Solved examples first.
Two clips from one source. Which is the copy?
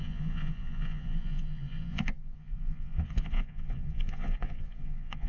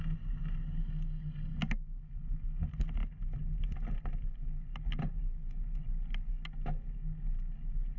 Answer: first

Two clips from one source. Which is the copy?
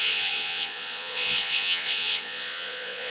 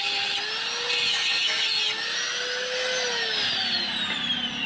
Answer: first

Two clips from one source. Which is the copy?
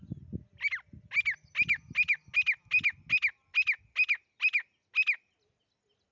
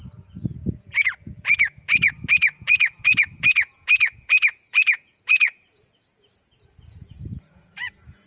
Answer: second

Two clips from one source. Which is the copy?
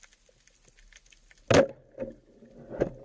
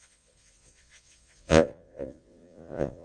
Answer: second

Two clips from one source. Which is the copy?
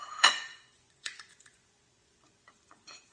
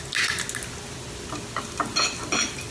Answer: first